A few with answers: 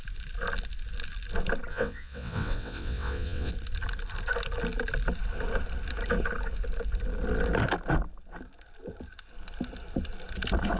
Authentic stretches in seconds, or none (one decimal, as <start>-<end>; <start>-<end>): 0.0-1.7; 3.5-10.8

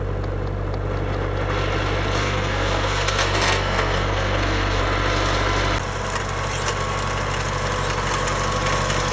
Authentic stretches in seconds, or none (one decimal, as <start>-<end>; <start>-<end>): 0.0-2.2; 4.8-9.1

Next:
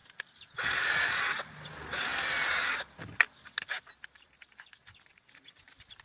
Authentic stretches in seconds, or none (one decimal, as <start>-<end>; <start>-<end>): 0.0-6.0

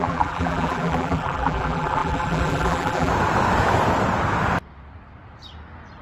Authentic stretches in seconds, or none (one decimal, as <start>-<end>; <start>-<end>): 3.1-6.0